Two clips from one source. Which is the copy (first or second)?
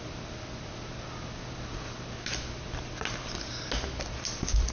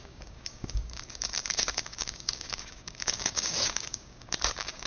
second